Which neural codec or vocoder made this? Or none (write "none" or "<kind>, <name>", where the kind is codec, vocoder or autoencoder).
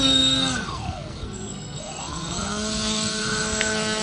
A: codec, SNAC